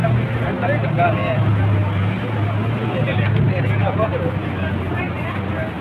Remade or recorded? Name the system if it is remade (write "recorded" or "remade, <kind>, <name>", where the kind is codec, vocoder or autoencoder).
recorded